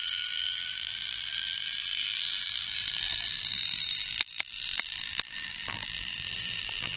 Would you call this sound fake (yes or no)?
yes